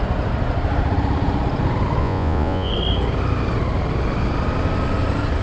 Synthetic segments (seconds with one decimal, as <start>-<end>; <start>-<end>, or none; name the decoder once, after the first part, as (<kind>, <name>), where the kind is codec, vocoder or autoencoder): 2.0-2.7 (vocoder, Vocos)